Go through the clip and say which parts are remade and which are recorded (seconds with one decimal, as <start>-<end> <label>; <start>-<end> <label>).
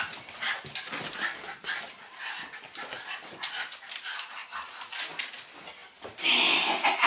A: 0.0-7.1 recorded